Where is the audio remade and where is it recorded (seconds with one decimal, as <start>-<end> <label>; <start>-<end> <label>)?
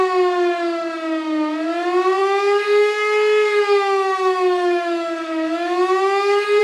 0.0-2.2 recorded; 2.2-6.6 remade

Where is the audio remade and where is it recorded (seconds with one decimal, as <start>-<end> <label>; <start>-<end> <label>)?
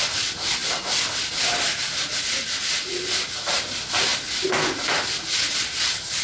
0.0-6.2 recorded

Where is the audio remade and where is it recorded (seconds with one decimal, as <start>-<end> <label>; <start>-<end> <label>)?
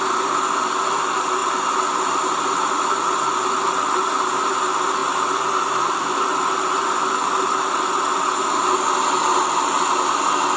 0.0-10.6 recorded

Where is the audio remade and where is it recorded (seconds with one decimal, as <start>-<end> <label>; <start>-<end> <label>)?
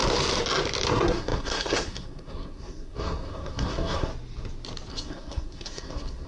0.0-0.9 recorded; 0.9-4.1 remade; 4.1-4.9 recorded; 4.9-6.3 remade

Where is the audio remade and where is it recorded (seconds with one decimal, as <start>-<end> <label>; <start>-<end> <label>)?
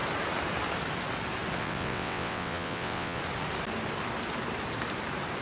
0.0-1.6 recorded; 1.6-3.2 remade; 3.2-5.4 recorded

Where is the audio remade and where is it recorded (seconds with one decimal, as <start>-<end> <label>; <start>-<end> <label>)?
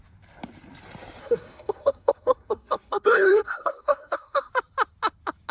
0.0-1.2 recorded; 1.2-4.5 remade; 4.5-5.5 recorded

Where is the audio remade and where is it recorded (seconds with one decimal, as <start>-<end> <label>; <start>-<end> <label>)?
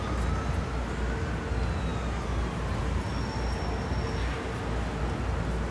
0.0-5.7 recorded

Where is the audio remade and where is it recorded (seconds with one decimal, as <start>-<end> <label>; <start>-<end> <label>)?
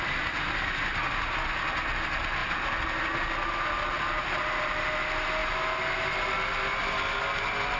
0.0-7.8 recorded